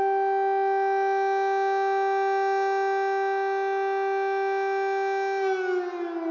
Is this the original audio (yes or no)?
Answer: yes